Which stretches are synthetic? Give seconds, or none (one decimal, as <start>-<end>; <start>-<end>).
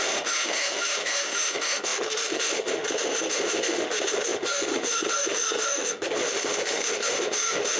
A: 0.0-7.8